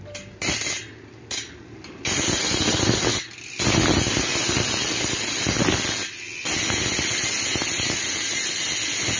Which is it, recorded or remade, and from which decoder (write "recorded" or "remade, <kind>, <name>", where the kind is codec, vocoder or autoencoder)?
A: recorded